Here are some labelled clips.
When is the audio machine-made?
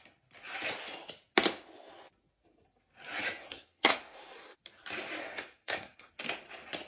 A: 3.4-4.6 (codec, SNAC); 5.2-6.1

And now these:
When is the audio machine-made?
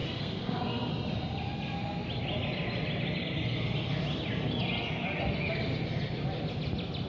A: 0.0-0.9 (codec, SNAC)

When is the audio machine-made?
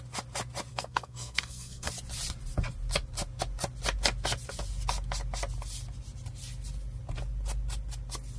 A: 0.7-1.9 (codec, SNAC)